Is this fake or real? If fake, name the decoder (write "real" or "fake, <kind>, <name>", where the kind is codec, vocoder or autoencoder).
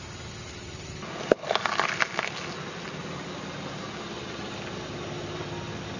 real